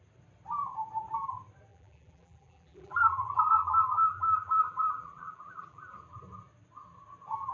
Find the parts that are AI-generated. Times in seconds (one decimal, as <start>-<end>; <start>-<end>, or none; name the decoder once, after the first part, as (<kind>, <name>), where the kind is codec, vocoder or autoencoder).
1.7-5.9 (vocoder, BigVGAN v2)